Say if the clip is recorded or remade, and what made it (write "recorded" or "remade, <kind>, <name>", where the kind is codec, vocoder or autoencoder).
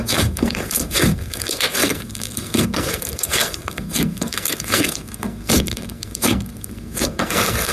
remade, codec, SNAC